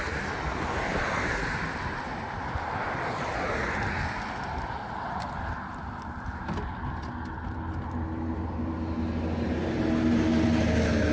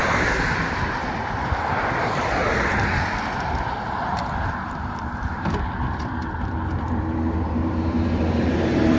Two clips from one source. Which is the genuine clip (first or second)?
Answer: first